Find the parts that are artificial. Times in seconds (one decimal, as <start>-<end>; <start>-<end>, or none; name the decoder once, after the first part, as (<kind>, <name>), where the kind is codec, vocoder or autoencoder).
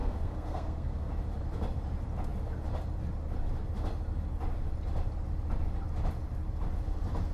0.0-1.1 (codec, SNAC)